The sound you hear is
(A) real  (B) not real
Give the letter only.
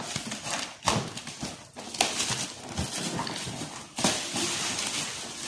A